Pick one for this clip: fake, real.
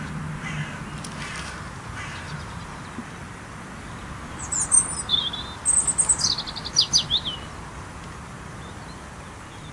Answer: real